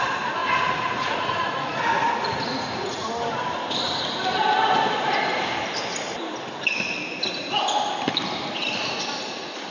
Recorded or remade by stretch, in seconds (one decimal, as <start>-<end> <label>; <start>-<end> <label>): 0.0-0.4 recorded; 0.4-3.1 remade; 3.1-9.7 recorded